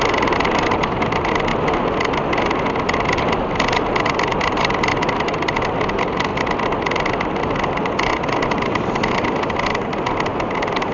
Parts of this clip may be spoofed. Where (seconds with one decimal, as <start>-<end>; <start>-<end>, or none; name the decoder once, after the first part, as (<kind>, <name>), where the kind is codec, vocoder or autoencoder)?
none